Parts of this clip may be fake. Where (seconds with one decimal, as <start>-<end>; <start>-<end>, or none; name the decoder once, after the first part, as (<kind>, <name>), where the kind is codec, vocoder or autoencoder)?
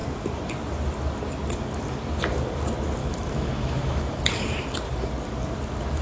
3.0-4.2 (autoencoder, DAC-VAE)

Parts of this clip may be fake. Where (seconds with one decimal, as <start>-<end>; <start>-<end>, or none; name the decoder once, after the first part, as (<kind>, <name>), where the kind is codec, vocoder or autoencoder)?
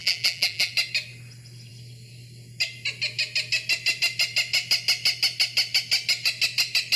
0.0-0.7 (vocoder, BigVGAN v2)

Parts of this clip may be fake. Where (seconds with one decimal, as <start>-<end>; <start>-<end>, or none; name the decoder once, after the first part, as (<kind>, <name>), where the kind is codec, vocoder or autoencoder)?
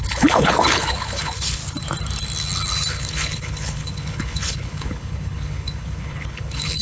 0.0-1.6 (codec, HILCodec); 2.9-6.8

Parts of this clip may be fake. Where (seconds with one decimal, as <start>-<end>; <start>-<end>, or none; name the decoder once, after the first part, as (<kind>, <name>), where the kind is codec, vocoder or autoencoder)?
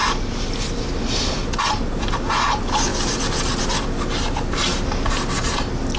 none